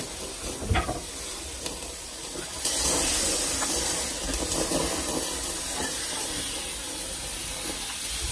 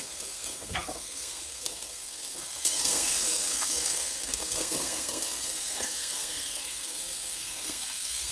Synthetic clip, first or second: second